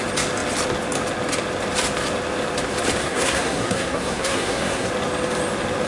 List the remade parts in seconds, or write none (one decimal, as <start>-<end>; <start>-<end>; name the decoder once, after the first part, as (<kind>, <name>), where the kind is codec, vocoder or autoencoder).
3.0-4.9 (codec, SNAC)